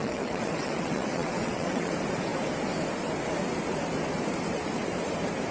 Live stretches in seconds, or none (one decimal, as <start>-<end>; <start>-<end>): 1.9-5.5